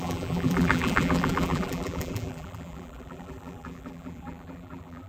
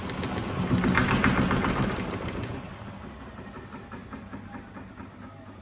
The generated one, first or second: first